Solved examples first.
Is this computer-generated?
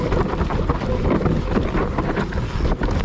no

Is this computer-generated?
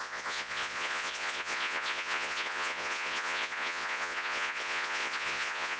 yes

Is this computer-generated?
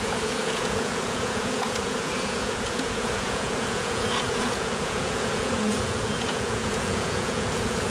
yes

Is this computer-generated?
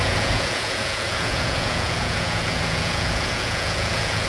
yes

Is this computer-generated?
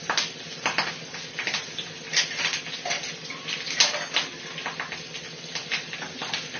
no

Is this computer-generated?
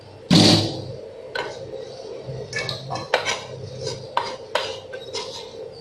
no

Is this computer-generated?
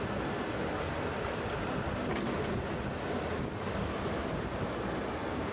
no